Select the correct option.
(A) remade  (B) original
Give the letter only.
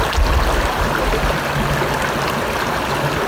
B